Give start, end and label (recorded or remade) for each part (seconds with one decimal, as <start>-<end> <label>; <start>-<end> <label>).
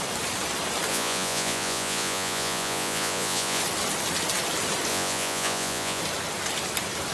0.0-0.9 recorded; 0.9-3.6 remade; 3.6-4.9 recorded; 4.9-6.0 remade; 6.0-7.1 recorded